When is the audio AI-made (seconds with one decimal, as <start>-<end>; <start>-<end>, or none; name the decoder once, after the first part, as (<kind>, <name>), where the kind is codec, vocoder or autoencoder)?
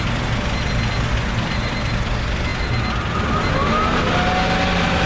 none